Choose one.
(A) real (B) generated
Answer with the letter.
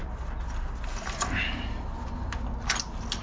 A